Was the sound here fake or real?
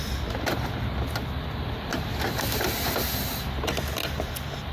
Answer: real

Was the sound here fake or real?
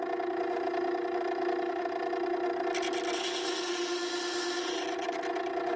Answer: real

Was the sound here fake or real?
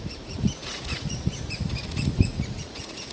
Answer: fake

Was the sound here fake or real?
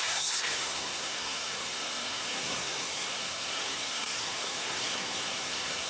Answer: fake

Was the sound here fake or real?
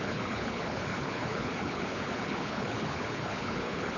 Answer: fake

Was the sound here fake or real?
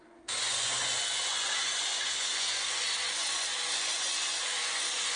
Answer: fake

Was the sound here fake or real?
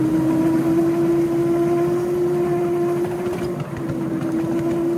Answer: real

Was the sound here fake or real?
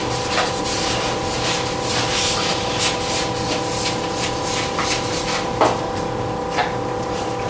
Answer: real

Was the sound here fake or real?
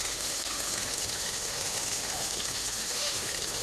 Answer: fake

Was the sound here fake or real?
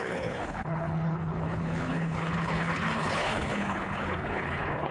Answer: fake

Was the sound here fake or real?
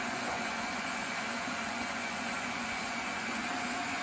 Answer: fake